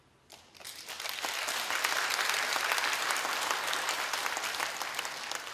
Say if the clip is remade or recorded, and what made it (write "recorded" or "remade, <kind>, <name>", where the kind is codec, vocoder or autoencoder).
recorded